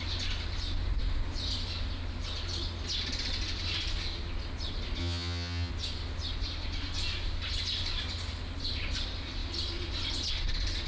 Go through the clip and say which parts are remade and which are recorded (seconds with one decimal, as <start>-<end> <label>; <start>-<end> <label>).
0.0-5.0 recorded; 5.0-5.7 remade; 5.7-10.9 recorded